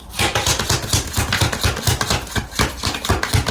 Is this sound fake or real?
real